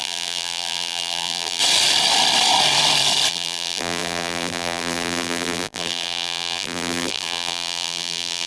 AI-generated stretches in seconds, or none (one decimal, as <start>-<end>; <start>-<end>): 0.0-1.6; 3.3-8.5